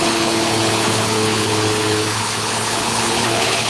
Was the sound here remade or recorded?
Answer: remade